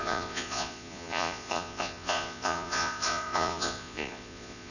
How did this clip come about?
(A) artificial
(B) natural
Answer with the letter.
A